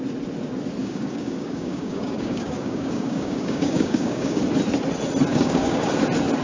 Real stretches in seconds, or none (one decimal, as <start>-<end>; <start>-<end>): 0.0-0.8; 4.4-5.3; 5.9-6.4